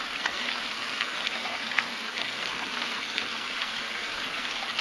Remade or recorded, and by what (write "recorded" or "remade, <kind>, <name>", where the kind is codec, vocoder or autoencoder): remade, codec, SNAC